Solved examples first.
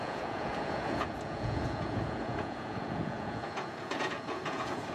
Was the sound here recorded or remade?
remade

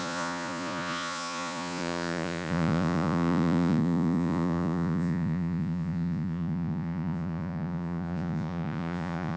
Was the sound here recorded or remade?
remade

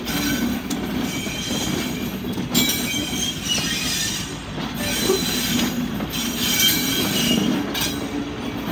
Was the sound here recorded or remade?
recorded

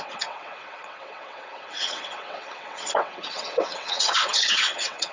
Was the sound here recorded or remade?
remade